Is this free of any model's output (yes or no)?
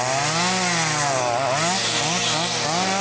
yes